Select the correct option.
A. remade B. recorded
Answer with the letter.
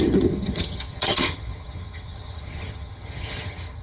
A